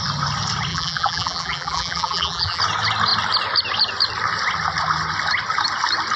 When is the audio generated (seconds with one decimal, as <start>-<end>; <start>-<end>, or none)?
0.7-2.6